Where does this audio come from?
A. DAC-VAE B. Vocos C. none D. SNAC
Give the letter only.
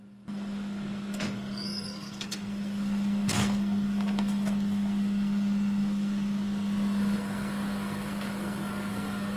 D